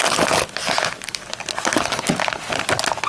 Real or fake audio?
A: real